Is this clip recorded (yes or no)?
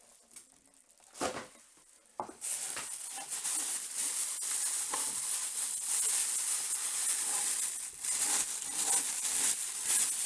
yes